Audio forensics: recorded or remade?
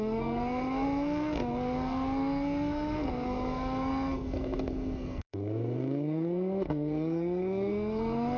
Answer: remade